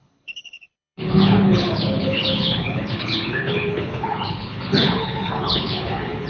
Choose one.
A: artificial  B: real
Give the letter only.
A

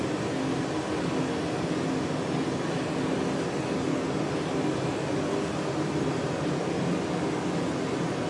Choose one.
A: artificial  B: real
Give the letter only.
B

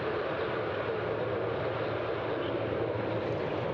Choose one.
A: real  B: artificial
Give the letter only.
A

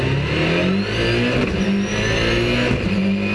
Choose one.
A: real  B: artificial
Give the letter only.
A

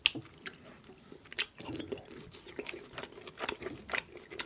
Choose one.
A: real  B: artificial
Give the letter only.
A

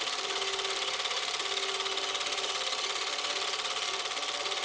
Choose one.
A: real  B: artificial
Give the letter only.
A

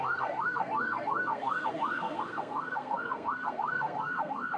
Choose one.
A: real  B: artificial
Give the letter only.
B